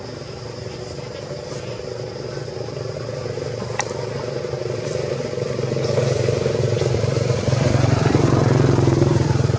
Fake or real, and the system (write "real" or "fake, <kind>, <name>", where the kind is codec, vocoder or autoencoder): fake, vocoder, BigVGAN v2